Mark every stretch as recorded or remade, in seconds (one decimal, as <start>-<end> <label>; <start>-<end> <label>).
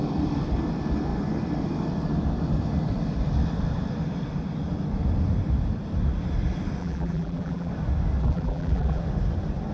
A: 0.0-6.8 recorded; 6.8-7.7 remade; 7.7-8.2 recorded; 8.2-9.0 remade; 9.0-9.7 recorded